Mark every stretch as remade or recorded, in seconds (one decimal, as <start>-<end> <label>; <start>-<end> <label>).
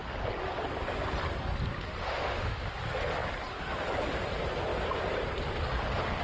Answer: 0.0-2.0 recorded; 2.0-2.7 remade; 2.7-6.2 recorded